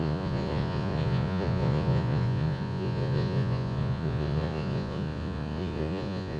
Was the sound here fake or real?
fake